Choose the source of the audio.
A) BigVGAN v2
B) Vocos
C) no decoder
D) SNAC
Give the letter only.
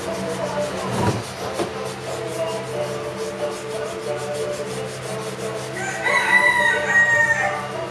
C